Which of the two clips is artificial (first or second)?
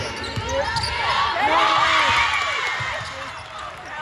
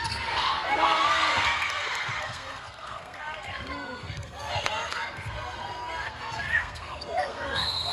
second